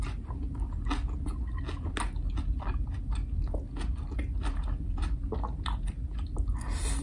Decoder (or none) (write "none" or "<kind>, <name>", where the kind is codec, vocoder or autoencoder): none